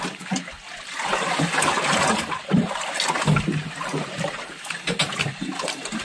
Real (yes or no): yes